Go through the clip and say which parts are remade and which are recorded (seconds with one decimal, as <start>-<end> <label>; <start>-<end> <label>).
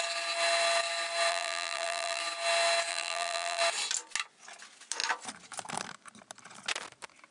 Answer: 0.0-1.3 recorded; 1.3-2.2 remade; 2.2-2.9 recorded; 2.9-3.6 remade; 3.6-7.3 recorded